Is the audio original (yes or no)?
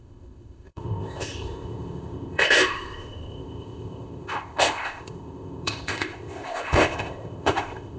no